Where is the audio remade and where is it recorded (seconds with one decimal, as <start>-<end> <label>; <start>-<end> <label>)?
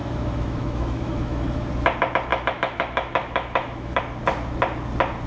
0.0-1.7 remade; 1.7-2.3 recorded; 2.3-4.0 remade; 4.0-5.3 recorded